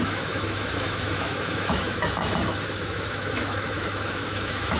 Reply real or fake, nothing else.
fake